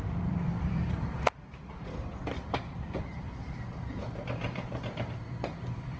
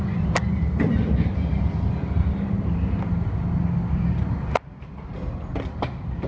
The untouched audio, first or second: second